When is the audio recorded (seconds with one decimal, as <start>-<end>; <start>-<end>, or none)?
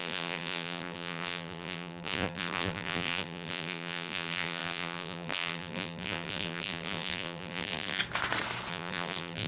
8.0-8.7